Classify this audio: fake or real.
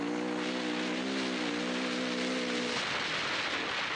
real